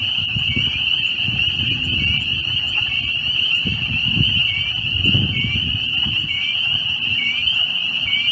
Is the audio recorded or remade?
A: remade